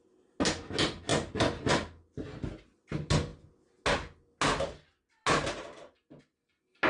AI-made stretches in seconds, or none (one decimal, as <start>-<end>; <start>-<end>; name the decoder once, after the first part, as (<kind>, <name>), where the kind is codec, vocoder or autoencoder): none